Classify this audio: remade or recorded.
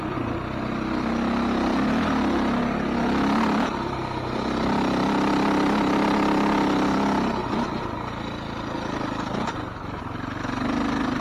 recorded